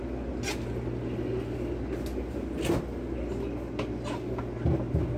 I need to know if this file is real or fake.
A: real